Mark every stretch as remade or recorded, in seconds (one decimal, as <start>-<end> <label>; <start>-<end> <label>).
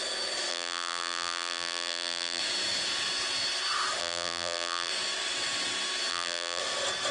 0.0-0.5 recorded; 0.5-2.4 remade; 2.4-4.0 recorded; 4.0-4.9 remade; 4.9-6.1 recorded; 6.1-6.6 remade; 6.6-7.1 recorded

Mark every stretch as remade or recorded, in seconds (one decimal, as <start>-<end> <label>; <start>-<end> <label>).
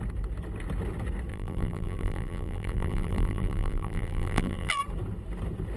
0.0-1.3 recorded; 1.3-4.8 remade; 4.8-5.8 recorded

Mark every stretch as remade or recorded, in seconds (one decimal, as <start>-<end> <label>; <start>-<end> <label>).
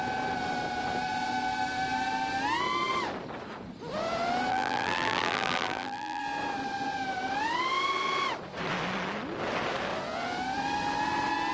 0.0-4.5 recorded; 4.5-6.2 remade; 6.2-11.5 recorded